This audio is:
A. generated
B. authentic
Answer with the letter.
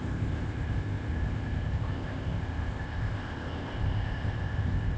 A